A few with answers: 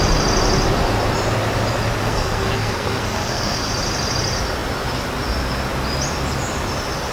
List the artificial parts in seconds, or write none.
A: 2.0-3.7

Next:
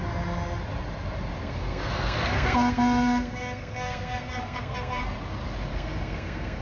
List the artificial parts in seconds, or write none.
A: 1.4-5.0; 5.7-6.6

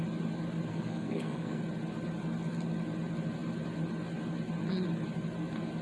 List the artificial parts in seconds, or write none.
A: 0.7-1.6

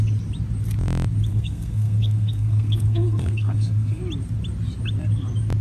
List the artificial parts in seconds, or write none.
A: 1.3-4.0

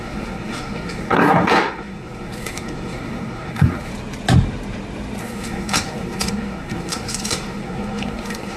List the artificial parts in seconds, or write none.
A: 0.0-3.9; 5.2-8.6

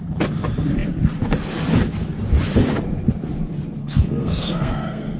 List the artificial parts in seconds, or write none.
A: 3.8-5.2

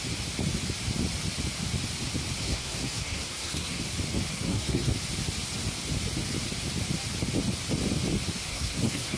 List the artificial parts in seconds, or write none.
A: 2.4-3.8; 4.3-4.9; 8.5-9.2

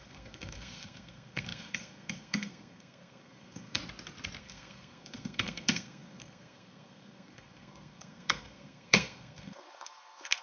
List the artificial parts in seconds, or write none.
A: 0.0-3.8; 4.4-10.4